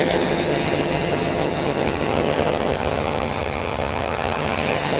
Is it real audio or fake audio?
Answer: fake